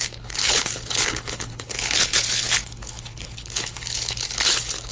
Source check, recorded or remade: remade